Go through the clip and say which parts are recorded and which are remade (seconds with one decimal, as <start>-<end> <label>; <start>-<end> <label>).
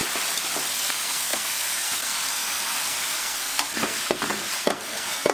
0.0-0.7 recorded; 0.7-5.3 remade